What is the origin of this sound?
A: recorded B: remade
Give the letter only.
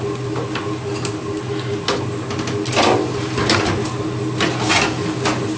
A